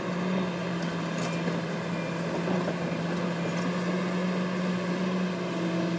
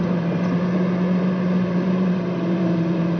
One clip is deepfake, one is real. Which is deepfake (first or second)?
second